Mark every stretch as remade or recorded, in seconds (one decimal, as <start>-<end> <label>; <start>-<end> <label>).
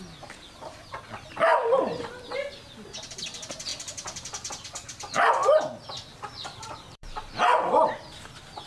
0.0-1.5 recorded; 1.5-2.1 remade; 2.1-6.1 recorded; 6.1-7.9 remade; 7.9-8.7 recorded